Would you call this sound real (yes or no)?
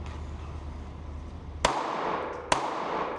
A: yes